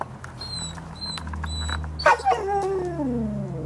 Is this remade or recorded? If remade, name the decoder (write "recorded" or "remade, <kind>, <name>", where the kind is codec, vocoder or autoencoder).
recorded